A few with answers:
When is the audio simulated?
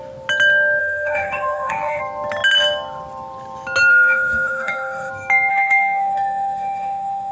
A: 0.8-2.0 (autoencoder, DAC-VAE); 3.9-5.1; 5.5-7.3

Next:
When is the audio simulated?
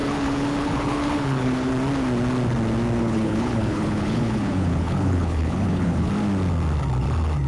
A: 0.0-1.7 (codec, HILCodec); 3.0-6.1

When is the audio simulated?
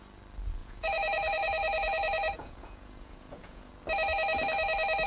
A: 0.6-3.7 (vocoder, Vocos)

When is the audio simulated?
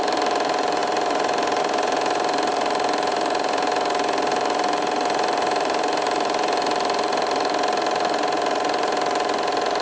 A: 0.0-9.8 (vocoder, BigVGAN v2)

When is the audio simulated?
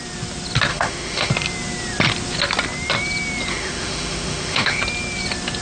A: 0.7-1.3 (autoencoder, DAC-VAE); 3.5-4.8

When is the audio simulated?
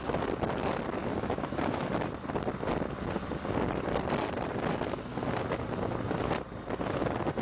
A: 1.0-1.9 (autoencoder, DAC-VAE)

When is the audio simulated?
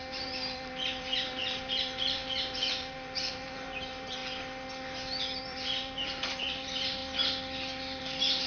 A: 0.0-4.2 (vocoder, BigVGAN v2); 5.4-7.0; 8.0-8.5